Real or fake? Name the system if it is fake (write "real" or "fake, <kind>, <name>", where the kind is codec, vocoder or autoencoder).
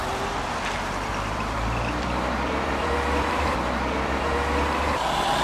fake, vocoder, BigVGAN v2